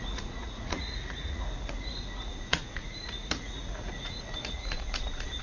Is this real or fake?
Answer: fake